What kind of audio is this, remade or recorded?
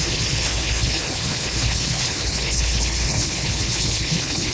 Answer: remade